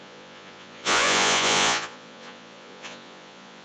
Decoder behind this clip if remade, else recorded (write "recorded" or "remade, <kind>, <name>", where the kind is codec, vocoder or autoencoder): remade, vocoder, Vocos